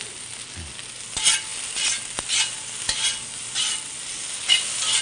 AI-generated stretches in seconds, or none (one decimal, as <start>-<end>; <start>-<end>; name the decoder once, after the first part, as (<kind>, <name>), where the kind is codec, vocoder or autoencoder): none